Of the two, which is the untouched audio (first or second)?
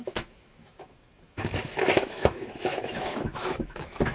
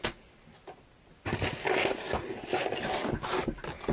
second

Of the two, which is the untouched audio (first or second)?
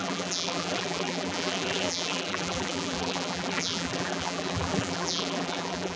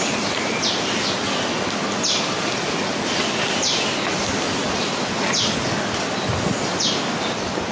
second